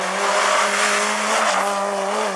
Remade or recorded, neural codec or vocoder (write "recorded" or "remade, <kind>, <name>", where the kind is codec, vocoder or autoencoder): recorded